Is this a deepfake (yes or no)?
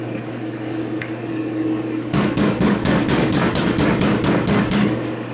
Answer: yes